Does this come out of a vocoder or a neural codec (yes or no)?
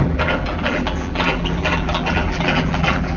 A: yes